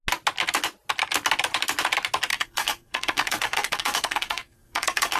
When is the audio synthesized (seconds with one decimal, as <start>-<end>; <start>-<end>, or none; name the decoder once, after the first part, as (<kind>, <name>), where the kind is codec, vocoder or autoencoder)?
2.3-5.2 (codec, SNAC)

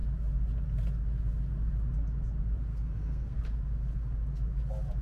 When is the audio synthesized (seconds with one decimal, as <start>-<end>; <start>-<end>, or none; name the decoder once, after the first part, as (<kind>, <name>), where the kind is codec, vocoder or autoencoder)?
2.7-3.4 (codec, SNAC)

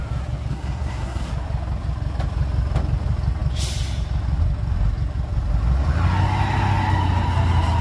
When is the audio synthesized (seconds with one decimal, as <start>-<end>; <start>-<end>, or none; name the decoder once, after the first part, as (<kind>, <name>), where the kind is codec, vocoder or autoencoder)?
0.5-1.3 (codec, SNAC)

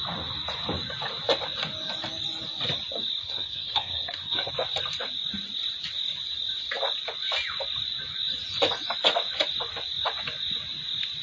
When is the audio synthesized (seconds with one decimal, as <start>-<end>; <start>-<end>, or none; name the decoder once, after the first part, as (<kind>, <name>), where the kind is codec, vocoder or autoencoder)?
3.2-4.5 (codec, SNAC)

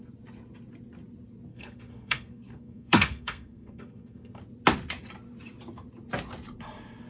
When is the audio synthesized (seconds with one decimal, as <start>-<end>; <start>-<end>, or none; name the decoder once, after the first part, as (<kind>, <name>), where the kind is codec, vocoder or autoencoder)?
1.5-4.4 (codec, SNAC)

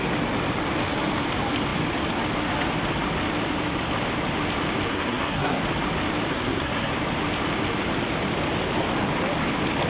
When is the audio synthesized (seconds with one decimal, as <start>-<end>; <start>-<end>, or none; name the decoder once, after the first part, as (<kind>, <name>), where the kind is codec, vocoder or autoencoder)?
4.9-5.6 (codec, SNAC); 6.3-6.9

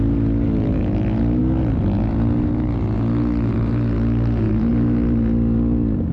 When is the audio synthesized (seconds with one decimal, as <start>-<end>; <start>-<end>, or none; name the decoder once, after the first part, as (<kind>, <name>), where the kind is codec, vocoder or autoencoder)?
none